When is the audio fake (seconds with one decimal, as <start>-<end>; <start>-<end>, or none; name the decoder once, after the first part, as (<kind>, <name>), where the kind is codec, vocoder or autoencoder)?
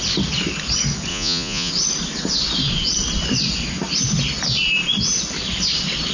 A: 1.1-1.7 (vocoder, Vocos)